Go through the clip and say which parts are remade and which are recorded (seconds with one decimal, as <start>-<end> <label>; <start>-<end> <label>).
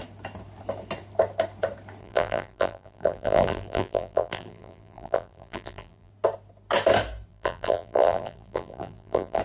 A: 0.0-2.0 recorded; 2.0-6.1 remade; 6.1-7.3 recorded; 7.3-9.4 remade